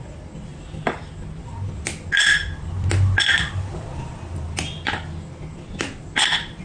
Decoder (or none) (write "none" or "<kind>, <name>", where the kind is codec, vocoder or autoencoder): none